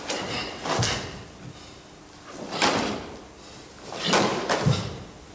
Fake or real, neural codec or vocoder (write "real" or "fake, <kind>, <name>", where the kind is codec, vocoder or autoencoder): real